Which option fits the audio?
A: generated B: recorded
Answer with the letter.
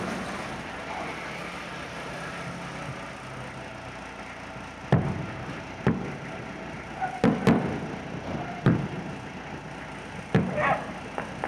B